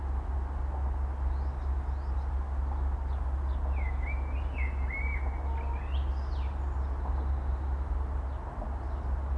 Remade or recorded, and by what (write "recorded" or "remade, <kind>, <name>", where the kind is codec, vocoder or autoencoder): recorded